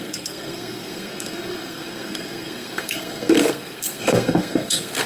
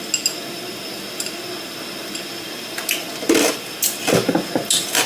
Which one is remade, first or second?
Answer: first